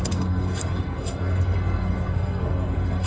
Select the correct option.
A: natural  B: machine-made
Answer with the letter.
B